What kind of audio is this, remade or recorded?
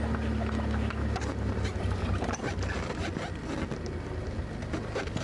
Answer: recorded